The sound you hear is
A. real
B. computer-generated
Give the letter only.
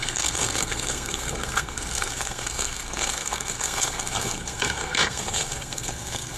B